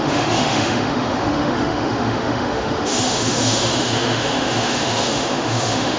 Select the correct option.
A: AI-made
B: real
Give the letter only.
A